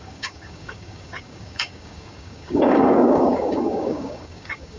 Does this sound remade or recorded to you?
remade